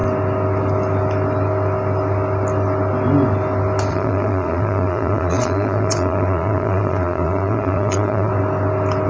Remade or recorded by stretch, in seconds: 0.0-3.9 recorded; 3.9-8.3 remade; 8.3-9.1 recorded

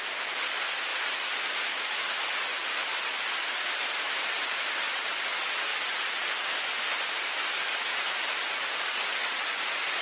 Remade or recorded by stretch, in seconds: 0.0-10.0 recorded

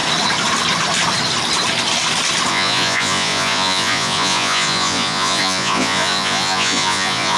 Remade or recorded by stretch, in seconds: 0.0-2.5 recorded; 2.5-7.4 remade